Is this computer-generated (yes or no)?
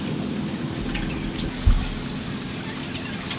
no